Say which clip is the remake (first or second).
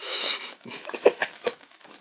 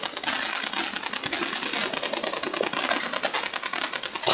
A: first